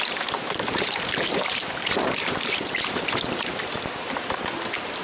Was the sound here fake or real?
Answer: fake